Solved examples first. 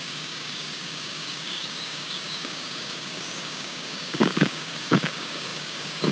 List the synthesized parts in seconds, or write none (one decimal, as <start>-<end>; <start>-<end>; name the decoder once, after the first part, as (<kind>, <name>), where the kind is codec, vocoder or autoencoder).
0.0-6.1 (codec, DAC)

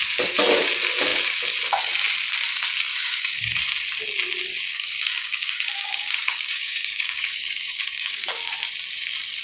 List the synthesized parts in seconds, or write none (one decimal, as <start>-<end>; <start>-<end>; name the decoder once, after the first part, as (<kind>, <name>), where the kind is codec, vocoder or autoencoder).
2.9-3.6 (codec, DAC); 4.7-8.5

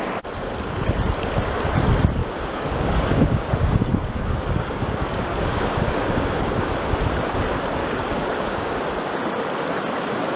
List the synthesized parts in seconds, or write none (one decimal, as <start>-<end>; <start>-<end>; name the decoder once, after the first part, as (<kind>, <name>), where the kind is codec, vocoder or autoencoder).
2.2-6.7 (codec, DAC); 7.8-8.8